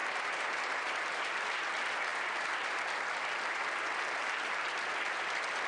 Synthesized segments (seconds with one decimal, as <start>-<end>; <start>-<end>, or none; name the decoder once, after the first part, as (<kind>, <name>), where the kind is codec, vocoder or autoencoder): none